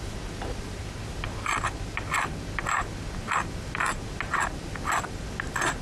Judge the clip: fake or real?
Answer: real